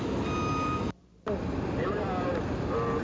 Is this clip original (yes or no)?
yes